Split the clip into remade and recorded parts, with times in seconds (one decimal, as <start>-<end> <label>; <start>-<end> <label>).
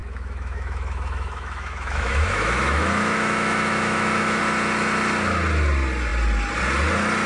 0.0-4.4 remade; 4.4-7.3 recorded